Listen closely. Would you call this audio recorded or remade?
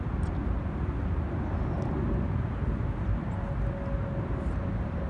recorded